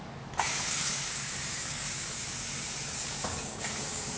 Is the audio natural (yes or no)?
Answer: no